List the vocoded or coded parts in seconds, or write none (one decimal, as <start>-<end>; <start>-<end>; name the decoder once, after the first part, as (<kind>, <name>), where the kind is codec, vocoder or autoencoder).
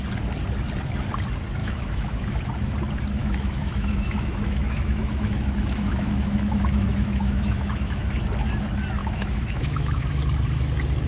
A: 1.6-2.3 (autoencoder, DAC-VAE); 3.2-8.1; 9.0-10.1